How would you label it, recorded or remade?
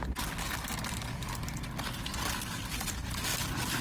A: recorded